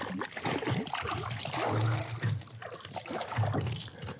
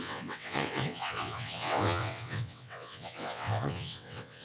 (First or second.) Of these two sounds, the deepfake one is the second